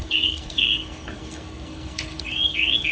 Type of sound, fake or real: fake